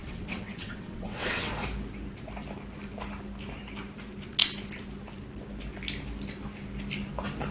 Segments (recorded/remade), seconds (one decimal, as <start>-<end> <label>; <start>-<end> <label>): 0.0-1.5 remade; 1.5-7.5 recorded